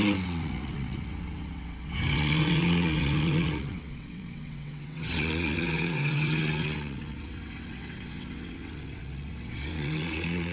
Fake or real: fake